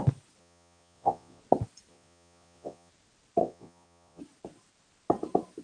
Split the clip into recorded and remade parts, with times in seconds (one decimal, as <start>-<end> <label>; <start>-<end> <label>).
0.0-0.4 recorded; 0.4-1.4 remade; 1.4-1.9 recorded; 1.9-2.9 remade; 2.9-3.4 recorded; 3.4-4.2 remade; 4.2-5.6 recorded